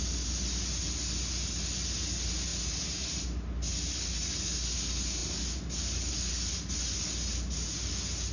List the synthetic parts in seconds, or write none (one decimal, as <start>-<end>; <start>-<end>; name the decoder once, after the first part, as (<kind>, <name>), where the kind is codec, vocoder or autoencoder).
none